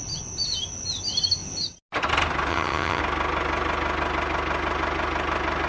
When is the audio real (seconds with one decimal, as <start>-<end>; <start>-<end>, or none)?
0.0-2.5; 3.0-5.7